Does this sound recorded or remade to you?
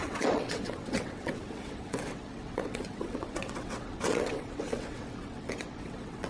remade